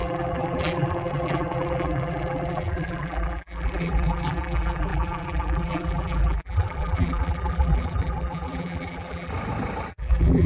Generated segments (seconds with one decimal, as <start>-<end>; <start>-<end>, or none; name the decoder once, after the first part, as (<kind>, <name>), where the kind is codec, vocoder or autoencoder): 0.0-9.3 (vocoder, BigVGAN v2); 9.9-10.5